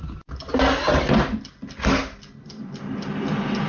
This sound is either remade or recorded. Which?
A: recorded